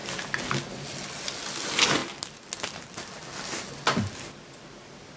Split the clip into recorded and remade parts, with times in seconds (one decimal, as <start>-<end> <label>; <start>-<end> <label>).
0.0-5.2 recorded